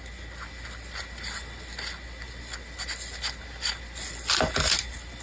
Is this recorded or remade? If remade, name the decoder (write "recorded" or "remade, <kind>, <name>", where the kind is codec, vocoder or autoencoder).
recorded